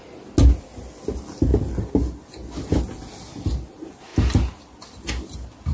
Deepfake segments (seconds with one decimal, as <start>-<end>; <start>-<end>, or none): none

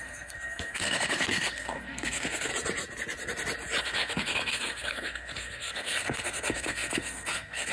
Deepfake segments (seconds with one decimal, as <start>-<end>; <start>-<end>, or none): 0.0-2.5; 3.8-7.7

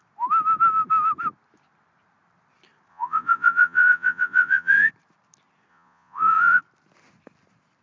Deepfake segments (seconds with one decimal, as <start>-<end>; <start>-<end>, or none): 2.9-4.9; 5.7-6.6